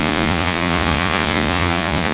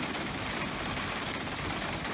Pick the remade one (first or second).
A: first